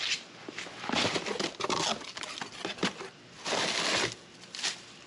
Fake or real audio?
real